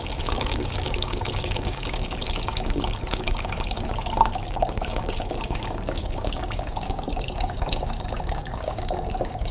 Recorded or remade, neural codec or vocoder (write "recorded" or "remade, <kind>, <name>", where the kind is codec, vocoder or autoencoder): remade, codec, DAC